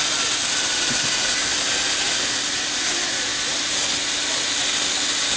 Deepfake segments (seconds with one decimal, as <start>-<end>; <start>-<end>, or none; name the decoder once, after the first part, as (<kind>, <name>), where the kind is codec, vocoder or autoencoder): none